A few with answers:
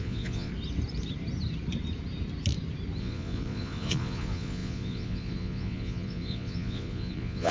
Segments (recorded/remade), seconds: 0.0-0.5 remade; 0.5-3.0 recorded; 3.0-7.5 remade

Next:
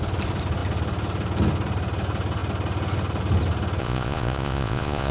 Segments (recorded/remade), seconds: 0.0-3.8 recorded; 3.8-5.1 remade

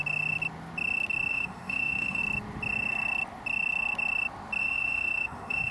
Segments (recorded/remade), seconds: 0.0-1.3 recorded; 1.3-2.2 remade; 2.2-4.6 recorded; 4.6-5.7 remade

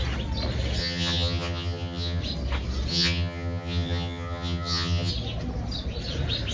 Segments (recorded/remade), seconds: 0.0-0.8 recorded; 0.8-2.2 remade; 2.2-2.9 recorded; 2.9-5.1 remade; 5.1-6.5 recorded

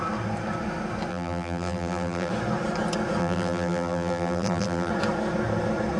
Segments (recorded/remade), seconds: 0.0-1.1 recorded; 1.1-2.3 remade; 2.3-3.2 recorded; 3.2-4.9 remade; 4.9-6.0 recorded

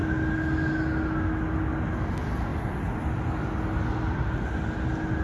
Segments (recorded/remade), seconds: 0.0-2.5 recorded; 2.5-3.1 remade; 3.1-5.2 recorded